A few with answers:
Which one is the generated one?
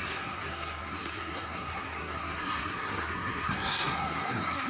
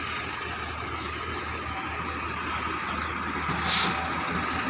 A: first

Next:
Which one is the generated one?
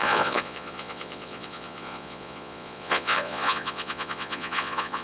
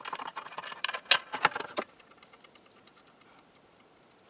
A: first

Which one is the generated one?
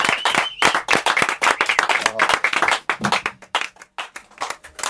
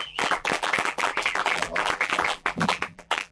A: second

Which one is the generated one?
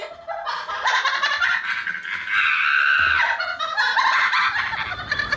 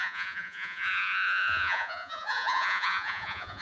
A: second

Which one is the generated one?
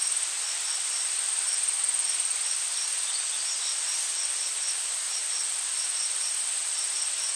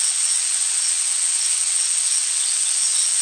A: second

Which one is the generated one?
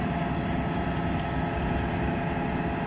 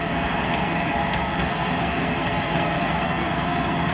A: second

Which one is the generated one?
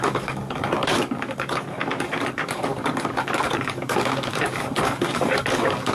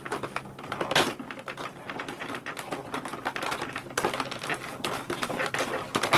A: first